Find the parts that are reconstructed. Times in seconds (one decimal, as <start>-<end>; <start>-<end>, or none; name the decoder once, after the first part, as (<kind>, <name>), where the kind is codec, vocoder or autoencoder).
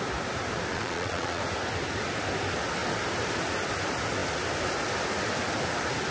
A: 0.7-1.4 (vocoder, Vocos)